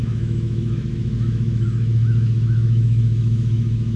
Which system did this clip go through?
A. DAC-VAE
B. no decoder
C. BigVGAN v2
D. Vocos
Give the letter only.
A